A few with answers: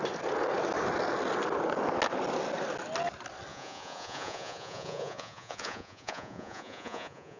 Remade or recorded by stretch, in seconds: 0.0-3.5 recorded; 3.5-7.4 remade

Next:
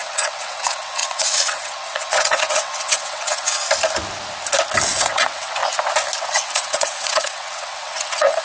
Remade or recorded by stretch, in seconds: 0.0-3.6 remade; 3.6-4.9 recorded; 4.9-5.6 remade; 5.6-6.2 recorded; 6.2-8.4 remade

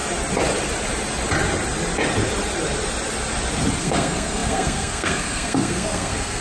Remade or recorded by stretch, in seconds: 0.0-3.8 recorded; 3.8-6.4 remade

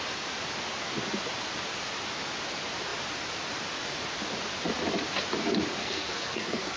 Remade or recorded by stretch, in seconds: 0.0-5.8 recorded; 5.8-6.8 remade

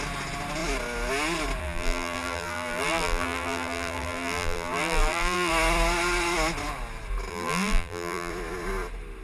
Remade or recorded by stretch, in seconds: 0.0-1.6 recorded; 1.6-5.5 remade; 5.5-7.3 recorded; 7.3-8.3 remade; 8.3-9.2 recorded

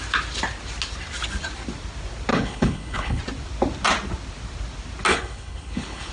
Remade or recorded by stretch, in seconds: 0.0-2.3 recorded; 2.3-3.2 remade; 3.2-5.1 recorded; 5.1-6.1 remade